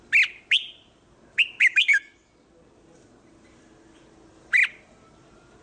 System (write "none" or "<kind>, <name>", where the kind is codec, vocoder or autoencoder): none